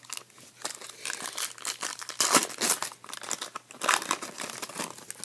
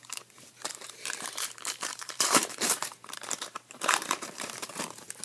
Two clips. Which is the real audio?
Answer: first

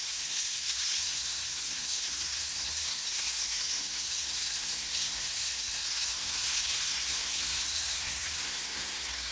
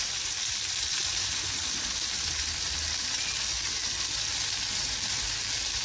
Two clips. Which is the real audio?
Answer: second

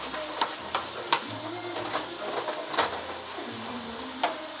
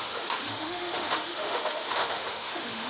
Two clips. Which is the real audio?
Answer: first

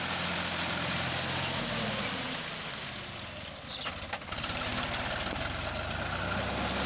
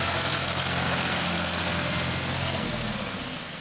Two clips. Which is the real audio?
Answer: first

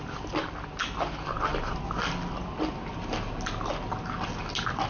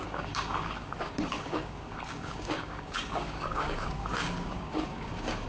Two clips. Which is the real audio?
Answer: first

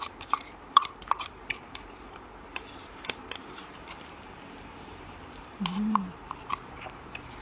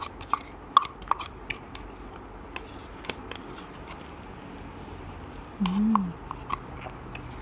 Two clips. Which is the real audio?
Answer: second